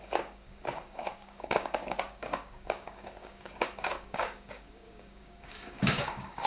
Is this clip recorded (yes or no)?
no